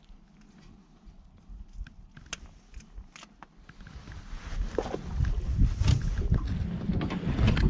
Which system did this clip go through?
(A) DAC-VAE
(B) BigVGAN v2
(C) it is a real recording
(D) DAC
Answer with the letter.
C